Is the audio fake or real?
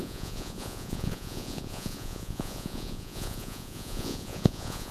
fake